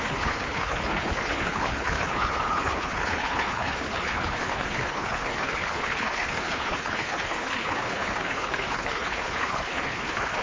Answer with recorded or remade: remade